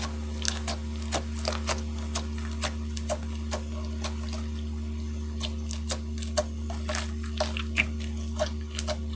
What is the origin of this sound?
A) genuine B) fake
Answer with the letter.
A